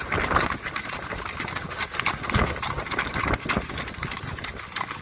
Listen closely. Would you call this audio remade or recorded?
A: recorded